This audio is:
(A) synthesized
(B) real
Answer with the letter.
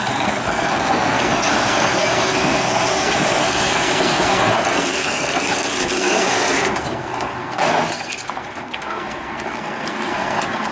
A